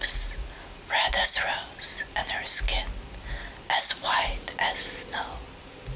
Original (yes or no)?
yes